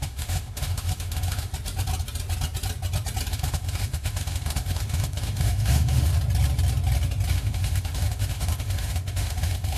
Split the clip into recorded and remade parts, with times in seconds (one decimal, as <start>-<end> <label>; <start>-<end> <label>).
0.0-1.5 remade; 1.5-3.3 recorded; 3.3-6.1 remade; 6.1-7.3 recorded; 7.3-9.8 remade